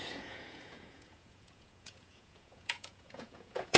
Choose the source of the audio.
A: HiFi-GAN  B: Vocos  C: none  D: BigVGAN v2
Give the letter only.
B